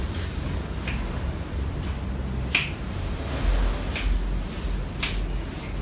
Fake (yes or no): no